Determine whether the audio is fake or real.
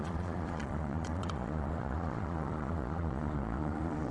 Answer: fake